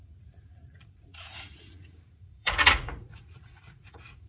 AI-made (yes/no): yes